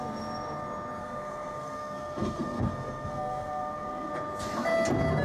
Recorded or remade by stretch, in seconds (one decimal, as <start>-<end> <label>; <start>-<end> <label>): 0.0-1.0 recorded; 1.0-4.1 remade; 4.1-5.2 recorded